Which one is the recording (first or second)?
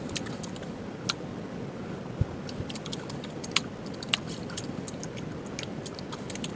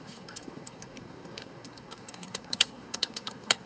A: first